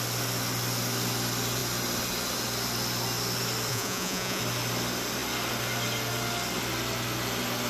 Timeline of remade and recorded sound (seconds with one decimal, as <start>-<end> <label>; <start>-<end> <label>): 0.0-3.7 recorded; 3.7-4.4 remade; 4.4-7.7 recorded